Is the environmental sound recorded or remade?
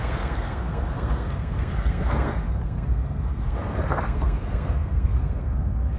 remade